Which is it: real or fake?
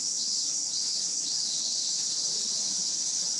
fake